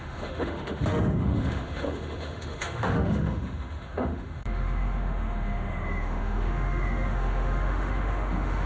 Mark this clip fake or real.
fake